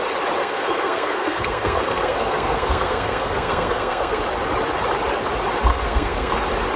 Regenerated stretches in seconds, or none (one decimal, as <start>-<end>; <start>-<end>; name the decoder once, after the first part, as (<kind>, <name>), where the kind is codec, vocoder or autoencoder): 0.4-4.2 (codec, SNAC); 5.7-6.3